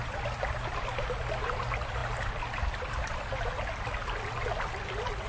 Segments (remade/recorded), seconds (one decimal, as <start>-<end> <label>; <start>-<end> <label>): 0.0-5.3 recorded